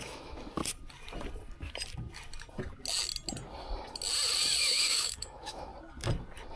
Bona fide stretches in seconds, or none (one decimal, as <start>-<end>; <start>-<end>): 0.6-4.6; 5.7-6.6